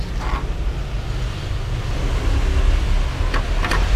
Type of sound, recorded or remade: recorded